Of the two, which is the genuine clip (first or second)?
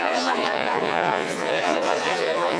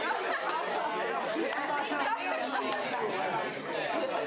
second